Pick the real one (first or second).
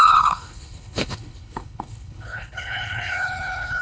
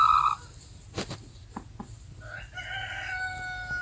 second